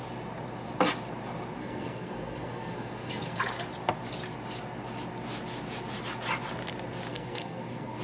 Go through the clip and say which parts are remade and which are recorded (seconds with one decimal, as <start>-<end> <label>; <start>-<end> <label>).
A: 0.0-1.6 recorded; 1.6-3.4 remade; 3.4-7.1 recorded; 7.1-8.0 remade